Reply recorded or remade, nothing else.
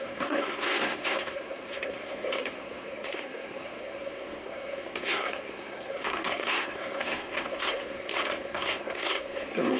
remade